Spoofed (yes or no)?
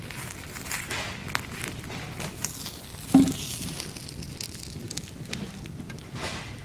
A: no